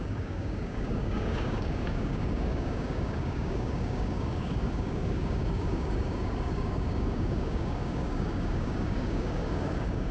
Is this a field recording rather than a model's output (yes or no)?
no